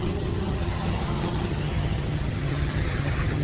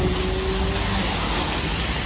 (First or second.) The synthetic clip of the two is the first